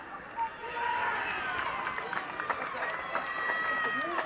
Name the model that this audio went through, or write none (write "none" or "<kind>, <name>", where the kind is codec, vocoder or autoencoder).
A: none